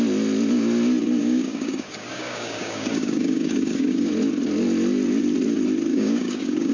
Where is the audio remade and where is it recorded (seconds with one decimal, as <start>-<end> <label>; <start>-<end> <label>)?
0.0-1.2 recorded; 1.2-4.1 remade; 4.1-5.9 recorded; 5.9-6.7 remade